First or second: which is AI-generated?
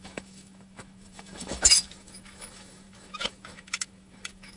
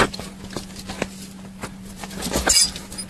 first